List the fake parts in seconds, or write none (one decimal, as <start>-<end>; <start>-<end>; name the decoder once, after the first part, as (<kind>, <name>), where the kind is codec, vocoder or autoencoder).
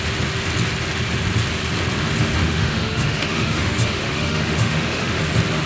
2.4-5.2 (autoencoder, DAC-VAE)